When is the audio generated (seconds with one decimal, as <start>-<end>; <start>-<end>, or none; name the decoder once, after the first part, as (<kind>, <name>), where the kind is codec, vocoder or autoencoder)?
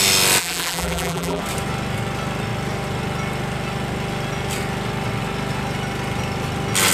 0.4-1.4 (vocoder, BigVGAN v2)